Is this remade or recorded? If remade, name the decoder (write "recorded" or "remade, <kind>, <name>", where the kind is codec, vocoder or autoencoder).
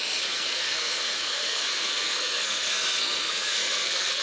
remade, codec, SNAC